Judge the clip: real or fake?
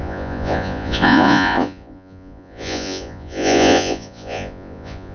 fake